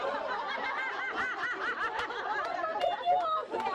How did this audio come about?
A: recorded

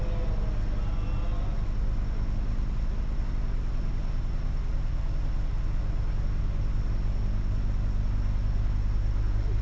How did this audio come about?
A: recorded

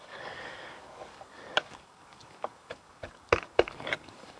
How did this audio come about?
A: remade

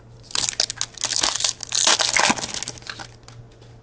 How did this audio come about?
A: recorded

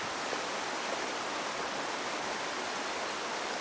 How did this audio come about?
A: recorded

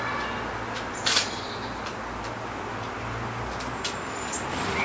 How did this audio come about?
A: recorded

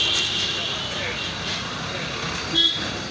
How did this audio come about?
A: recorded